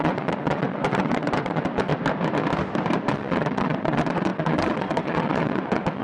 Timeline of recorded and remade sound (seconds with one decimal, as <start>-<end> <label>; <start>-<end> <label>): 0.0-1.9 remade; 1.9-3.1 recorded; 3.1-6.0 remade